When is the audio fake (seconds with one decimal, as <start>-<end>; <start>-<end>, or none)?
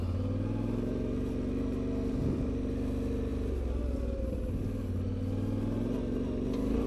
none